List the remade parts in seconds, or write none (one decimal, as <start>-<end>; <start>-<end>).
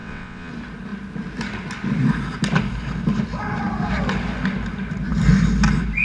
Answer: 0.0-0.5